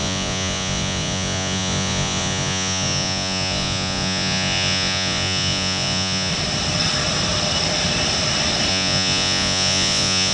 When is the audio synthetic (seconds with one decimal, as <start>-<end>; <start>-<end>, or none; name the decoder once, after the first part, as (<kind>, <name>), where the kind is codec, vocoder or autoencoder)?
0.0-6.3 (vocoder, Vocos); 8.7-10.3